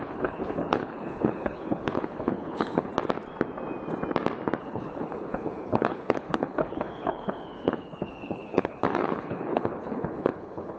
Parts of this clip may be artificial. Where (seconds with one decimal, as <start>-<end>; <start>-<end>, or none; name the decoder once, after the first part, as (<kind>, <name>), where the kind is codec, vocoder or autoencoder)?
0.0-2.9 (codec, HILCodec); 4.6-10.8